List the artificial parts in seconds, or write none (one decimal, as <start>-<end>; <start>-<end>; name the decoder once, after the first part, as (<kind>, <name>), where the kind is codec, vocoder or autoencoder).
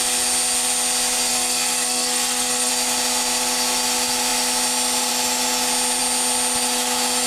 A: 1.3-2.7 (codec, SNAC)